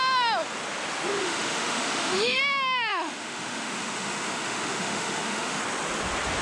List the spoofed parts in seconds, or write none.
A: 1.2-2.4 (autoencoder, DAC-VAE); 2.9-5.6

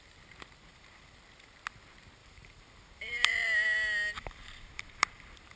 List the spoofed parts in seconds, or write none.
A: 0.7-1.2 (vocoder, BigVGAN v2); 2.2-5.6

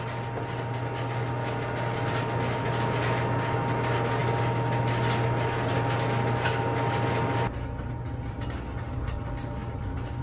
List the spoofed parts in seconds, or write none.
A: 9.6-10.2 (vocoder, BigVGAN v2)

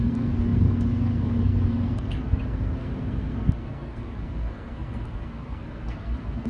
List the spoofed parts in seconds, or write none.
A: 0.0-6.5 (codec, SNAC)

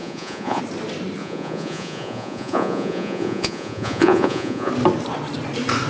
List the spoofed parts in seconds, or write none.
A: 0.0-0.6 (vocoder, Vocos); 1.2-4.7